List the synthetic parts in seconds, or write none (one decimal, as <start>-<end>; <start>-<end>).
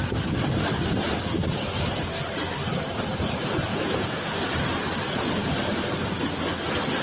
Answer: 3.7-4.3